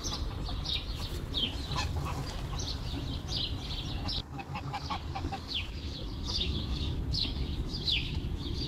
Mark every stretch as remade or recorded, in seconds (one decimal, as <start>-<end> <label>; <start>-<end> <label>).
0.0-4.2 recorded; 4.2-8.7 remade